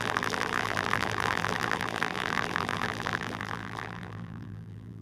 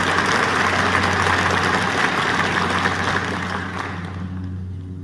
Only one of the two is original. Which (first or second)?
second